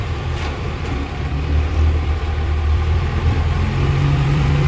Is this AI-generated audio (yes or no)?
yes